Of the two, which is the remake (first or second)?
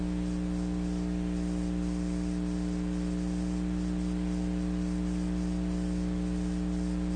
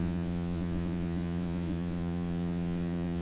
second